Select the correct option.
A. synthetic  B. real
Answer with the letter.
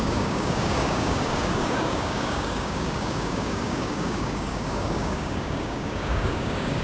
A